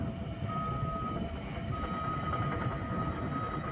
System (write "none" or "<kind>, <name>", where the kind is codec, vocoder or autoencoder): none